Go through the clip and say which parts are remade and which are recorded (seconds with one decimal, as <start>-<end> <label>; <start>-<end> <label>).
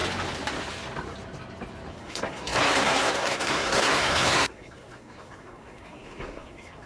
0.0-1.9 recorded; 1.9-6.9 remade